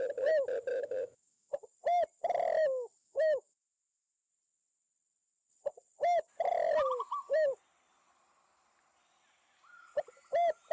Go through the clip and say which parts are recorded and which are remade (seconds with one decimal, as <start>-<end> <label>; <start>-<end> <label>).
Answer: 0.0-0.7 recorded; 0.7-1.5 remade; 1.5-3.0 recorded; 3.0-4.3 remade; 4.3-10.7 recorded